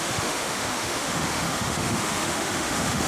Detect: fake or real fake